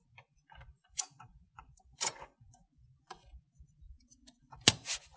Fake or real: fake